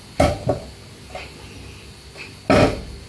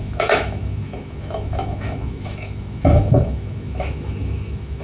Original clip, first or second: first